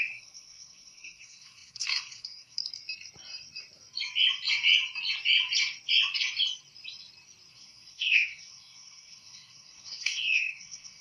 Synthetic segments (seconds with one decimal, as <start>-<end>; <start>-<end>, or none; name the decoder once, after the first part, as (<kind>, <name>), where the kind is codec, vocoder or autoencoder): 0.0-2.6 (codec, SNAC); 7.5-11.0